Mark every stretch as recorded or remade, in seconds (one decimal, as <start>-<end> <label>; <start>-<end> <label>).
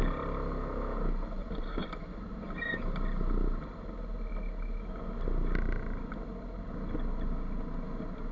0.0-8.3 recorded